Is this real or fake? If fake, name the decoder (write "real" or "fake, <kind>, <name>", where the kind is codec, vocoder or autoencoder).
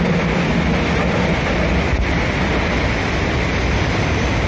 real